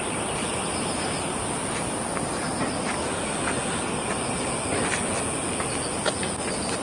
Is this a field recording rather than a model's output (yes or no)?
yes